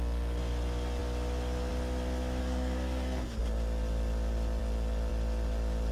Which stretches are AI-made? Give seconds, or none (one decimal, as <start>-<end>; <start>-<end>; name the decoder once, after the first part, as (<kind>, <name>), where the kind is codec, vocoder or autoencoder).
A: 2.4-3.4 (codec, SNAC)